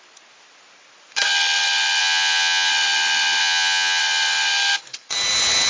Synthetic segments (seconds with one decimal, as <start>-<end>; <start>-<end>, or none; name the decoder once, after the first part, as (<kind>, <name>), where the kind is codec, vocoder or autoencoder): 2.0-2.7 (vocoder, Vocos); 3.4-4.0